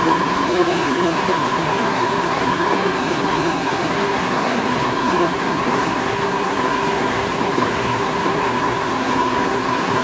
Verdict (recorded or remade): remade